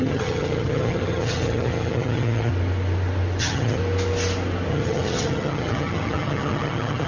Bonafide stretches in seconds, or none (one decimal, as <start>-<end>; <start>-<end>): 2.5-3.4; 3.8-4.7